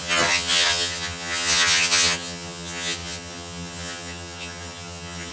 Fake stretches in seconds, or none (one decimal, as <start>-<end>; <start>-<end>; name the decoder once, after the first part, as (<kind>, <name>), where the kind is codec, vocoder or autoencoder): 0.0-5.3 (vocoder, HiFi-GAN)